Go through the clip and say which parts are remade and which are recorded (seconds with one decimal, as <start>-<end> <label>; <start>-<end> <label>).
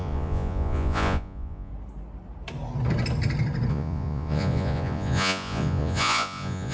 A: 0.0-1.7 remade; 1.7-3.7 recorded; 3.7-6.7 remade